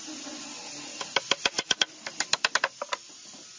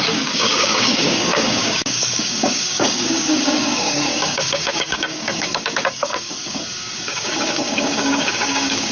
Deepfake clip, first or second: second